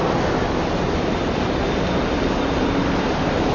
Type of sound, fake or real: real